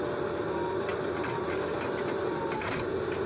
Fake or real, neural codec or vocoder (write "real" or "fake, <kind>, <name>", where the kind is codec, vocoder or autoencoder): real